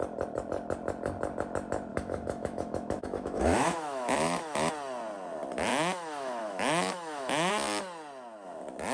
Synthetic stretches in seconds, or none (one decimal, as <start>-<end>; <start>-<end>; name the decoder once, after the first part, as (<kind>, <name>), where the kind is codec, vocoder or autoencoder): 1.9-4.7 (autoencoder, DAC-VAE); 5.7-7.5